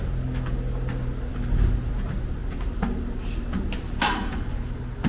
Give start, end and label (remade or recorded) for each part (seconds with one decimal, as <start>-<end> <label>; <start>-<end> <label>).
0.0-5.1 recorded